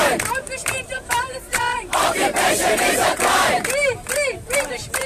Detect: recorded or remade remade